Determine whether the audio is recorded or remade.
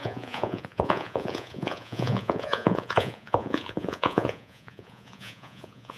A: remade